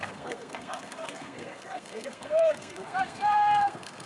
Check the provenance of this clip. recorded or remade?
remade